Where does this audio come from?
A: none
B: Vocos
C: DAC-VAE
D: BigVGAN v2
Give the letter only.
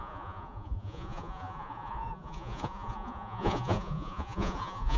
B